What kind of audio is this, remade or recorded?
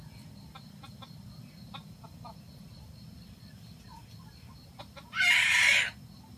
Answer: recorded